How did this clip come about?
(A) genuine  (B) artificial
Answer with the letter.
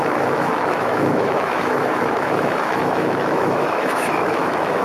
B